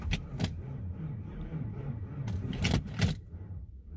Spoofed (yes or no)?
no